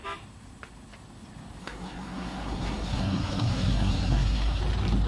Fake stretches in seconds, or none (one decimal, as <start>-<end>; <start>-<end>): 1.6-4.6